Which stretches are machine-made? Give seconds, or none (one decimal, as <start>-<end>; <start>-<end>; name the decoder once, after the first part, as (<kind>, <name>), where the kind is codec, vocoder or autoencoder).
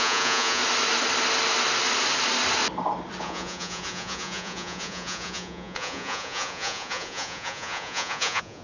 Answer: 0.0-0.6 (vocoder, Vocos); 3.2-8.6